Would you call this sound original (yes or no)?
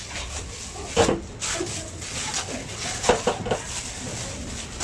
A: yes